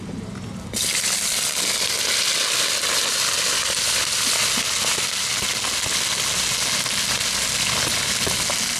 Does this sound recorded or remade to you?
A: recorded